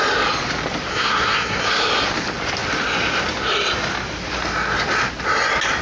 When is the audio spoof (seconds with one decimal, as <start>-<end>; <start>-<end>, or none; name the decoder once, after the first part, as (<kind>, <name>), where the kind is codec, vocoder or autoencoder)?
0.9-1.8 (codec, SNAC)